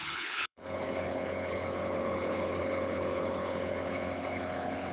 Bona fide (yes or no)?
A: no